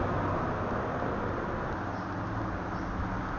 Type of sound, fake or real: real